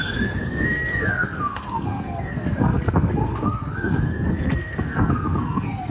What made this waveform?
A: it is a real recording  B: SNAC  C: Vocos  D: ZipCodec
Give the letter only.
B